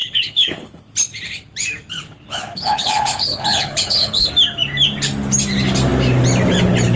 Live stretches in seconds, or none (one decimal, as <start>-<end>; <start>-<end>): 0.9-1.9; 4.3-7.0